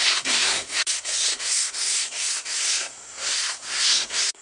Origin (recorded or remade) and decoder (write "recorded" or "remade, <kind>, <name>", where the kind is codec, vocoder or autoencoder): remade, codec, SNAC